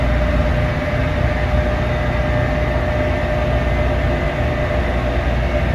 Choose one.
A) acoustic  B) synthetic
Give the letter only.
A